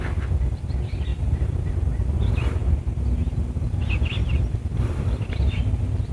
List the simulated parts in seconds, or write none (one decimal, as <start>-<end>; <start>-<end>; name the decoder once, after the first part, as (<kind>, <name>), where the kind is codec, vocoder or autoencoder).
1.1-1.7 (vocoder, BigVGAN v2); 4.7-5.5